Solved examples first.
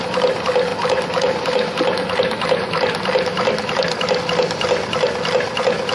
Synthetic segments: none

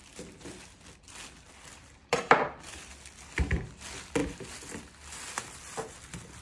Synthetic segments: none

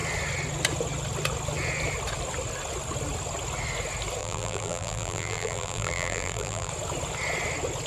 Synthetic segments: 4.2-6.7 (vocoder, BigVGAN v2)

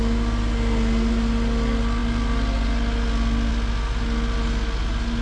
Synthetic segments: none